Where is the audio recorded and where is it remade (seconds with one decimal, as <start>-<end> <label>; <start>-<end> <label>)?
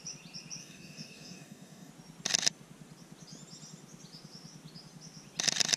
0.0-0.6 recorded; 0.6-1.9 remade; 1.9-5.8 recorded